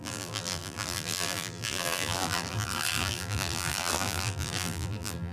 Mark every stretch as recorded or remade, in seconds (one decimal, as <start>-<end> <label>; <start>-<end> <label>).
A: 0.0-5.3 remade